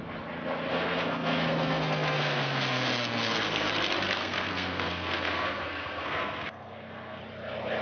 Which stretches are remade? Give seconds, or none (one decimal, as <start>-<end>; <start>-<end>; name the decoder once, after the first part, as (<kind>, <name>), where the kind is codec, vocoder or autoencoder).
0.7-3.7 (codec, SNAC); 4.2-7.2